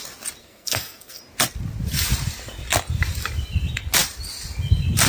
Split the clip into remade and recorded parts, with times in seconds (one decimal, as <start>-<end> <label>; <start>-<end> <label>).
0.0-0.4 recorded; 0.4-1.2 remade; 1.2-5.1 recorded